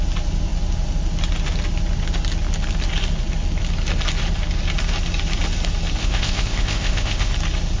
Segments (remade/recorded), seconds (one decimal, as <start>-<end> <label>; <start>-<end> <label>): 0.0-6.0 recorded; 6.0-7.3 remade; 7.3-7.8 recorded